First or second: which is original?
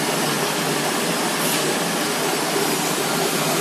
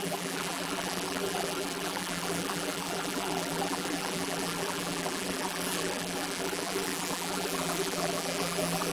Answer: first